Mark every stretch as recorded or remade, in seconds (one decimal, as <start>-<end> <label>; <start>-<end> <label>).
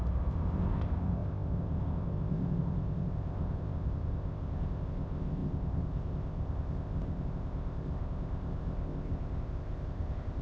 0.0-10.4 remade